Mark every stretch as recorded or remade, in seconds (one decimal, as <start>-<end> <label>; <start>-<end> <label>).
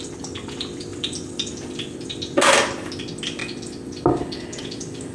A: 0.0-0.9 recorded; 0.9-2.0 remade; 2.0-5.1 recorded